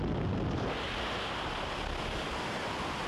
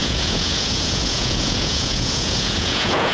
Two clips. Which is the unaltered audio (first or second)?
first